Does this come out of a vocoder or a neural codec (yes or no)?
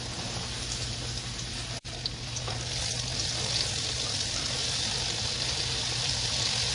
no